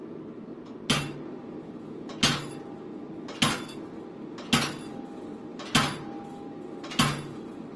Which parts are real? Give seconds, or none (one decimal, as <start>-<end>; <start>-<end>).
0.0-5.5; 6.3-7.8